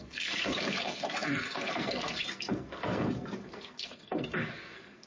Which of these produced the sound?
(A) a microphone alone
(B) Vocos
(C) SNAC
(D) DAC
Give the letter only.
C